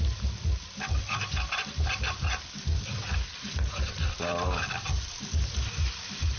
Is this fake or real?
fake